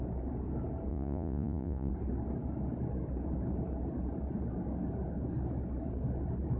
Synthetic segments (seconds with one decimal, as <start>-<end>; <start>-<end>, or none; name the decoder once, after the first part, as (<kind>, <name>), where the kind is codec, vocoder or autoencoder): 0.9-1.9 (vocoder, Vocos)